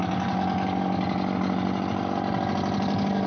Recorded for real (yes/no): yes